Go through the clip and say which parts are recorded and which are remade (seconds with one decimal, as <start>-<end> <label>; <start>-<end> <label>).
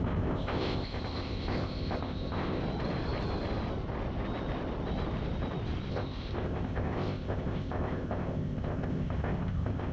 0.0-2.6 remade; 2.6-5.9 recorded; 5.9-9.9 remade